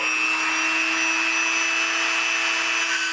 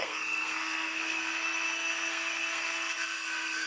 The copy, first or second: second